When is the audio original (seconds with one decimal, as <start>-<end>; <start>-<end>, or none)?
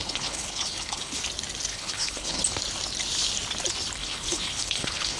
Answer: 1.2-1.7; 2.4-4.0